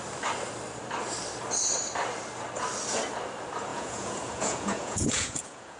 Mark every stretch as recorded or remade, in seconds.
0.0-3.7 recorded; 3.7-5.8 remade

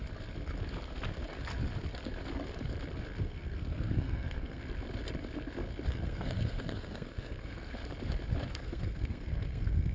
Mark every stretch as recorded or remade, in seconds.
0.0-3.2 recorded; 3.2-4.6 remade; 4.6-5.9 recorded; 5.9-7.8 remade; 7.8-8.5 recorded; 8.5-9.9 remade

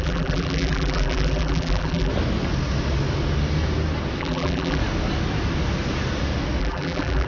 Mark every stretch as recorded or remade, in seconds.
0.0-2.1 remade; 2.1-4.2 recorded; 4.2-4.8 remade; 4.8-6.6 recorded; 6.6-7.3 remade

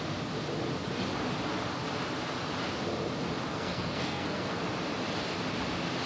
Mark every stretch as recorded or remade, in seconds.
0.0-3.5 recorded; 3.5-4.6 remade; 4.6-6.1 recorded

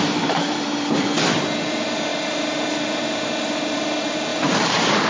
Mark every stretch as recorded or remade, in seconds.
0.0-0.7 remade; 0.7-1.7 recorded; 1.7-5.1 remade

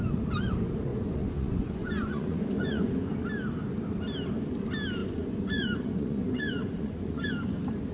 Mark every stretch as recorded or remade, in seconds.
0.0-0.9 recorded; 0.9-3.1 remade; 3.1-5.0 recorded; 5.0-7.3 remade; 7.3-7.9 recorded